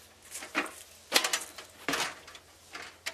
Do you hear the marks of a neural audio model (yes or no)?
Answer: no